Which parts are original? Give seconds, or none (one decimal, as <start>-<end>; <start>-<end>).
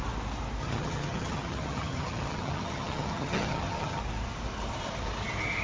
0.0-0.6; 4.0-5.6